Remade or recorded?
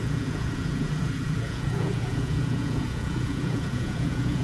remade